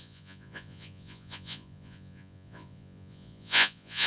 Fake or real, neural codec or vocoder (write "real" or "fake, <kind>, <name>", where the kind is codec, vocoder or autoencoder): fake, vocoder, Vocos